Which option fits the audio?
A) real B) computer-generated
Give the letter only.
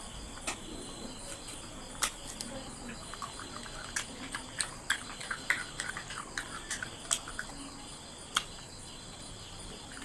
A